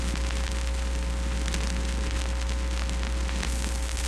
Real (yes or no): yes